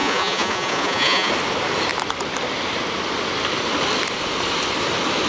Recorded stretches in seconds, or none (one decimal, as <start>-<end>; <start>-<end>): 1.3-5.3